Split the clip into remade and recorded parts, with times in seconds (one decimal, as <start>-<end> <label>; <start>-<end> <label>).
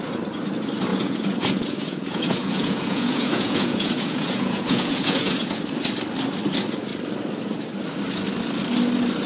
0.0-0.9 recorded; 0.9-5.6 remade; 5.6-9.3 recorded